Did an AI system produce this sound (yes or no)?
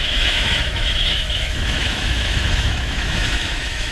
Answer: yes